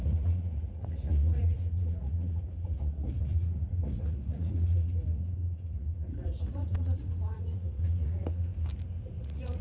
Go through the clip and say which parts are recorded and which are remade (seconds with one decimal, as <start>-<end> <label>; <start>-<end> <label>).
0.0-8.5 remade; 8.5-9.2 recorded; 9.2-9.6 remade